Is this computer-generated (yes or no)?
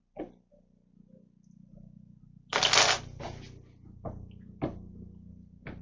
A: no